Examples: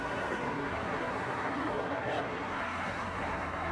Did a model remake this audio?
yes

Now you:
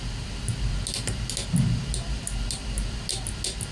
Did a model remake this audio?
no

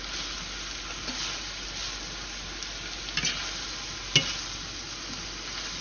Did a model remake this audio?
no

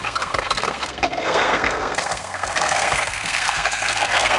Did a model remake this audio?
yes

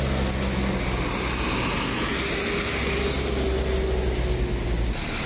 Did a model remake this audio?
no